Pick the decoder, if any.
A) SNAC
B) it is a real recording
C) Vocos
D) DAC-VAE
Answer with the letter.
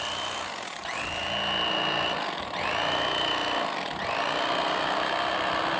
B